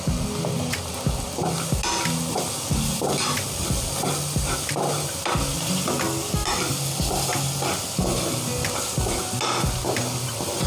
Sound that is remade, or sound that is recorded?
recorded